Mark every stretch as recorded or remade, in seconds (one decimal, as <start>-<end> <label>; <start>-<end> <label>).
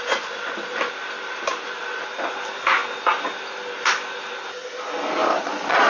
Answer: 0.0-5.2 recorded; 5.2-5.9 remade